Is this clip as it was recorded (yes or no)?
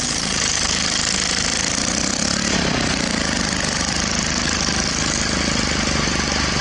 yes